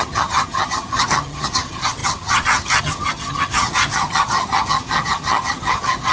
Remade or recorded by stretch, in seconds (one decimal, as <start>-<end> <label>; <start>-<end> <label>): 0.0-6.1 remade